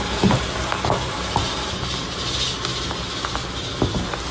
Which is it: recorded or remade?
recorded